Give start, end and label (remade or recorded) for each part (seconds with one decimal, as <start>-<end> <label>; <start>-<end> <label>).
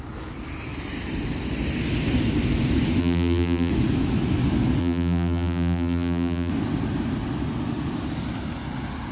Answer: 0.0-3.0 recorded; 3.0-3.7 remade; 3.7-4.8 recorded; 4.8-6.5 remade; 6.5-9.1 recorded